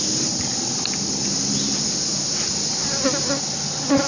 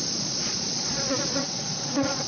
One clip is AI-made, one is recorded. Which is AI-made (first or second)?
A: second